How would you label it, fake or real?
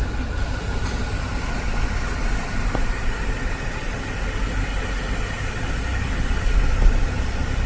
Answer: real